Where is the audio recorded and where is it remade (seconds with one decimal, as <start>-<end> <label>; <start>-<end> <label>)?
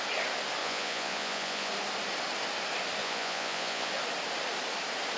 0.0-0.6 recorded; 0.6-1.7 remade; 1.7-3.0 recorded; 3.0-3.9 remade; 3.9-5.2 recorded